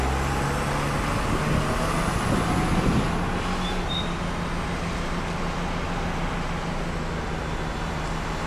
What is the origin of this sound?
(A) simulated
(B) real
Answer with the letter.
B